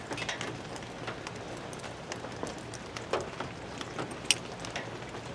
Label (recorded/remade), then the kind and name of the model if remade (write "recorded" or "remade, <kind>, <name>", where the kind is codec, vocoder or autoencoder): recorded